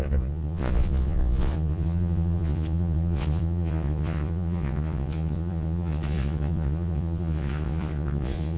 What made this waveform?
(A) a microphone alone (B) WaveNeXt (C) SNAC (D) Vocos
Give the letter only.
D